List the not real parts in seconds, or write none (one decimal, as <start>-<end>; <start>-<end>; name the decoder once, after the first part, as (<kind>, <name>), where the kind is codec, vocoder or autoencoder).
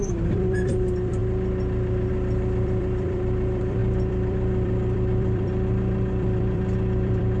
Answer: 0.0-1.2 (vocoder, BigVGAN v2); 2.1-7.4